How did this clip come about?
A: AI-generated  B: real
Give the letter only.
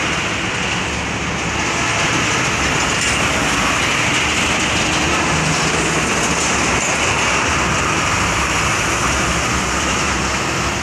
B